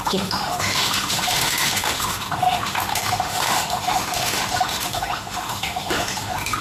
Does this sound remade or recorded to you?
remade